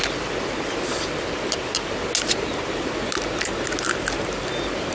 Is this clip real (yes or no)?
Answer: yes